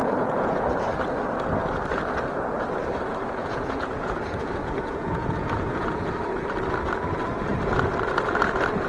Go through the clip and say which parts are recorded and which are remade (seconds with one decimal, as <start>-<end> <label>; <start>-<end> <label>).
0.0-0.7 remade; 0.7-3.4 recorded; 3.4-6.2 remade; 6.2-8.9 recorded